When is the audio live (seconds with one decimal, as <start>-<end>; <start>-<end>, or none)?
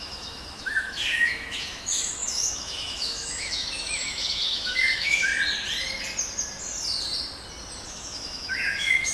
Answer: 5.3-7.9